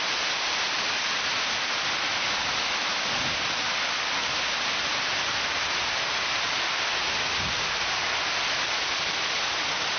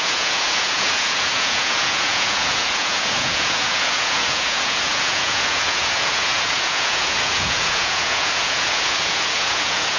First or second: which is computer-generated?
second